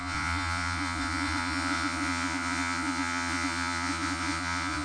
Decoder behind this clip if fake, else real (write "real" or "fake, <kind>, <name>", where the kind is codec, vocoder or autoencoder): fake, vocoder, Vocos